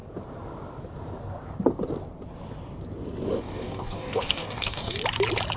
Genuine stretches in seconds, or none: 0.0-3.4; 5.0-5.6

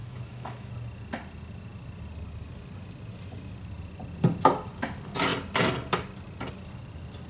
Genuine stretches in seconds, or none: 0.7-7.3

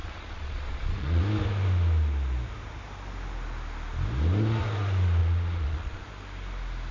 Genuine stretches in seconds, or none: 1.2-5.2; 6.0-6.9